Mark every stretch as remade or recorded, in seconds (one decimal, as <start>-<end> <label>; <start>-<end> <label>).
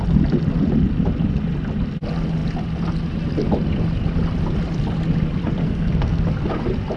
0.0-5.6 recorded; 5.6-6.2 remade; 6.2-7.0 recorded